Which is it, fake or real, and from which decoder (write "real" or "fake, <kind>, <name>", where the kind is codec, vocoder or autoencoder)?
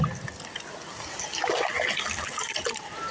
real